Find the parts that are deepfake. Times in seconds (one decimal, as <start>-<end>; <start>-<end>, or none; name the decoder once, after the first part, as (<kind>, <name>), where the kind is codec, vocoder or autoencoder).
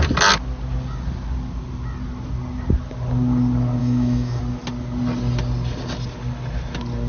3.8-4.4 (autoencoder, DAC-VAE)